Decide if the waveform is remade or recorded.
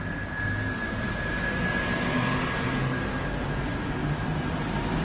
recorded